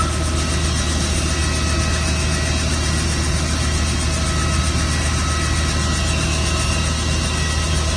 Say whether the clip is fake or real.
real